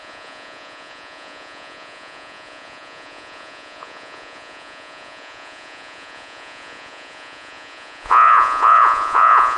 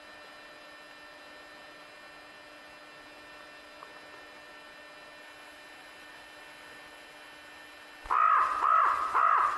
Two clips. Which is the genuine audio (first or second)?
second